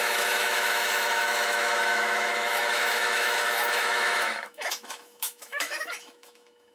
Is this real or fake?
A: fake